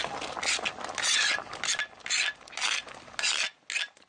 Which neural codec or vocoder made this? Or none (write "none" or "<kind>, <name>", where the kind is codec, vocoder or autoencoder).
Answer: none